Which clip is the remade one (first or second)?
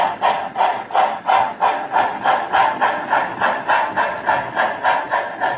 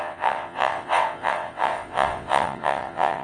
second